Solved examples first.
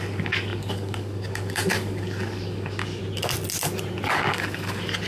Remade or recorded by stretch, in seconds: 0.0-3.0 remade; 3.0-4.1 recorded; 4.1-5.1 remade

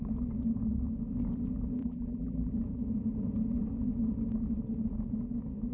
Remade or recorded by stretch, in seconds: 0.0-1.8 recorded; 1.8-2.5 remade; 2.5-5.7 recorded

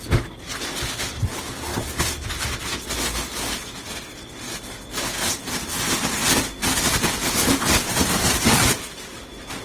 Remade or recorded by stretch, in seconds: 0.0-6.6 recorded; 6.6-9.6 remade

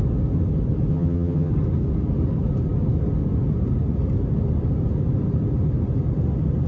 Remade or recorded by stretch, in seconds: 0.0-0.9 recorded; 0.9-1.5 remade; 1.5-6.7 recorded

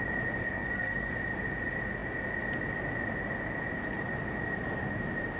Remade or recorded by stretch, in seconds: 0.0-0.4 recorded; 0.4-1.1 remade; 1.1-5.4 recorded